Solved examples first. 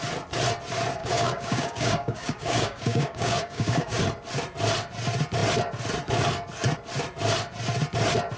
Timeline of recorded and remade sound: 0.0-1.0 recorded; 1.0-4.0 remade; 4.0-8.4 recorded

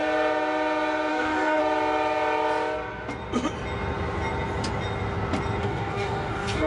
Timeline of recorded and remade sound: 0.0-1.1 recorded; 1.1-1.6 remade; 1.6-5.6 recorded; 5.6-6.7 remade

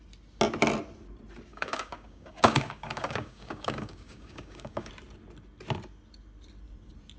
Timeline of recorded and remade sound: 0.0-1.5 recorded; 1.5-4.9 remade; 4.9-7.2 recorded

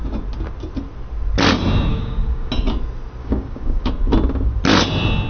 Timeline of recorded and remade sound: 0.0-1.9 recorded; 1.9-2.5 remade; 2.5-3.2 recorded; 3.2-3.9 remade; 3.9-5.3 recorded

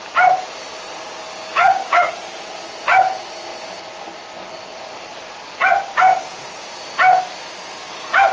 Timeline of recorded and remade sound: 0.0-1.5 recorded; 1.5-2.1 remade; 2.1-8.3 recorded

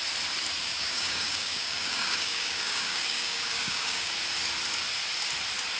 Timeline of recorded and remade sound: 0.0-0.6 recorded; 0.6-4.1 remade; 4.1-5.8 recorded

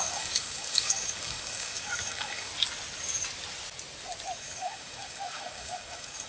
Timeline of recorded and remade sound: 0.0-2.5 remade; 2.5-4.4 recorded; 4.4-6.3 remade

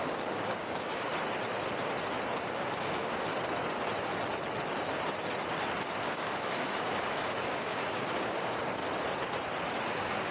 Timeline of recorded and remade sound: 0.0-1.1 remade; 1.1-2.4 recorded; 2.4-3.3 remade; 3.3-6.0 recorded; 6.0-8.8 remade; 8.8-9.9 recorded; 9.9-10.3 remade